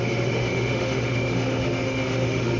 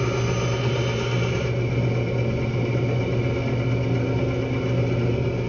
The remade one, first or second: first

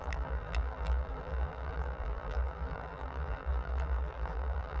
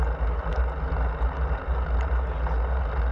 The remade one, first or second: first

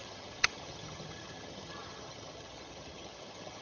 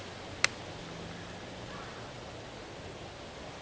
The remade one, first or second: first